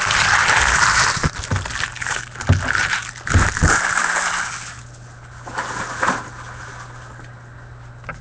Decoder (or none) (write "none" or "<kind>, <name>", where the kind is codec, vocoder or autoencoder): none